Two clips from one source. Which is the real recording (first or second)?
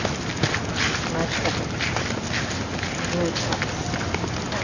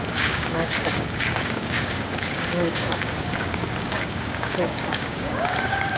first